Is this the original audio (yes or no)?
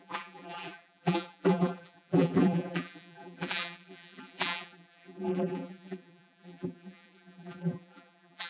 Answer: no